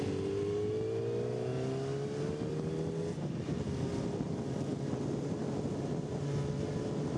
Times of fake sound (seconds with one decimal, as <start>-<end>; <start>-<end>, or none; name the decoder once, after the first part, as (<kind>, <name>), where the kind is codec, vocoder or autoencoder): none